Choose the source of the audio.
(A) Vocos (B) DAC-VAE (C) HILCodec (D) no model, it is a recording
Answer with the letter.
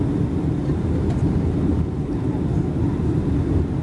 D